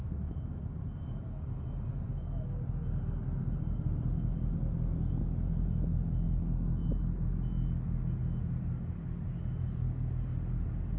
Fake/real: real